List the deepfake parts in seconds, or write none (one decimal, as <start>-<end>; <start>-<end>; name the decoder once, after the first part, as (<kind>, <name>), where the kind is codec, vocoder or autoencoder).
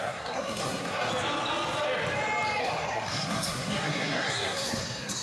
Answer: 0.0-1.1 (codec, SNAC); 2.6-5.2